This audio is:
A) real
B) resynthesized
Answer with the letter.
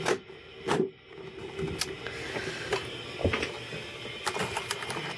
A